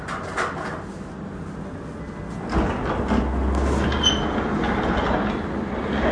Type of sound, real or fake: real